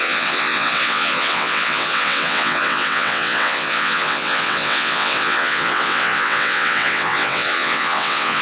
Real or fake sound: fake